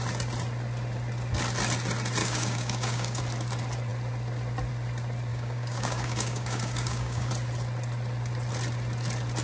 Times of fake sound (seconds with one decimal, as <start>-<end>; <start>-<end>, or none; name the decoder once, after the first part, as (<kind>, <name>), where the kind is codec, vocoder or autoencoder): 2.2-3.2 (codec, DAC); 5.3-7.3